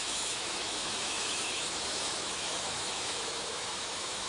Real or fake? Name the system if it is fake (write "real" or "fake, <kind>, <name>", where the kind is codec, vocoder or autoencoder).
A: fake, autoencoder, DAC-VAE